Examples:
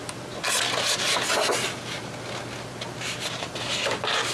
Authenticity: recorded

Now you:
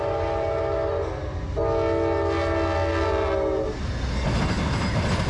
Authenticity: recorded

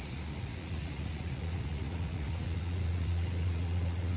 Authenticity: remade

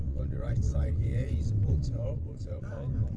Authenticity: remade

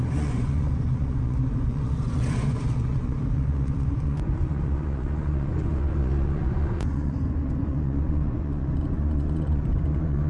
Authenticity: remade